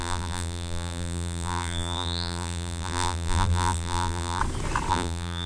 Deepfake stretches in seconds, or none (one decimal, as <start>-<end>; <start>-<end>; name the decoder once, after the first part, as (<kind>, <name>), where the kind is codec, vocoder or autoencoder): 0.0-4.4 (vocoder, BigVGAN v2); 4.9-5.5